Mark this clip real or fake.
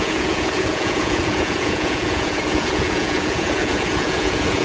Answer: fake